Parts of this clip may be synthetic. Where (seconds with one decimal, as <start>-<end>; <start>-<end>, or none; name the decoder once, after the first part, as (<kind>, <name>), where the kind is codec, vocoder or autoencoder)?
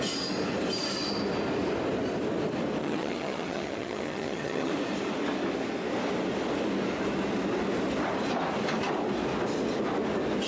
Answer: 2.8-4.7 (vocoder, HiFi-GAN)